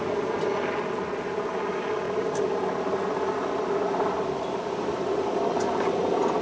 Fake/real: real